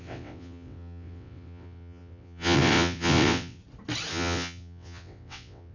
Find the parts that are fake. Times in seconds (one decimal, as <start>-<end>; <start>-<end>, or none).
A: 0.0-3.6; 4.1-5.7